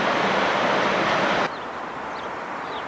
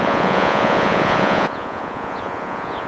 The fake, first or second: second